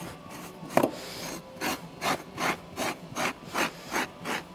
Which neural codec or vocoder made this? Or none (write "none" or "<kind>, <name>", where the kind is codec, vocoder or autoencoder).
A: none